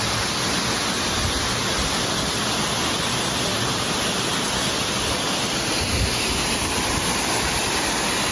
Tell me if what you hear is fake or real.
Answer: real